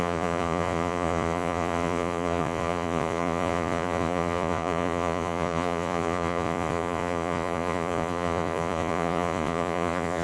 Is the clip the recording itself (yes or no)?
no